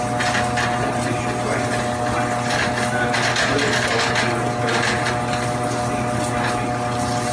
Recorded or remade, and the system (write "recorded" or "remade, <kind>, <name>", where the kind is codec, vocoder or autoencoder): recorded